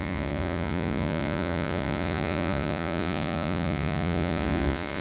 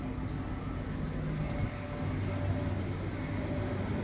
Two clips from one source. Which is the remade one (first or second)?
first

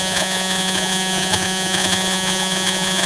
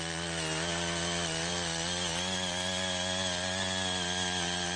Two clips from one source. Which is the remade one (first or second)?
first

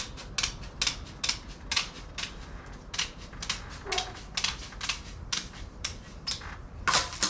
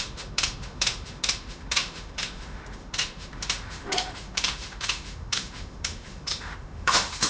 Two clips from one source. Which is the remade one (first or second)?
second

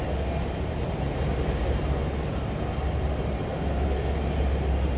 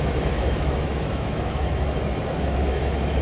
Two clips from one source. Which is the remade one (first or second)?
second